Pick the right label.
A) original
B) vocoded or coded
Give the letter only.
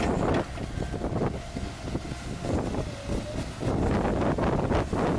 A